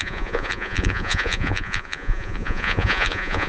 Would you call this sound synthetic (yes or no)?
yes